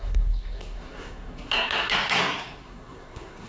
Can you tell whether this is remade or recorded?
remade